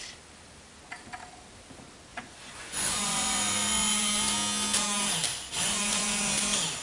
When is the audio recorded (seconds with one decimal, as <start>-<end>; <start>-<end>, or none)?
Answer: 0.0-2.1; 4.1-5.3; 6.3-6.8